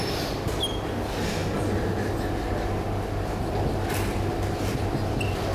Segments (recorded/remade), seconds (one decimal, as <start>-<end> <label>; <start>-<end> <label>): 0.0-5.5 recorded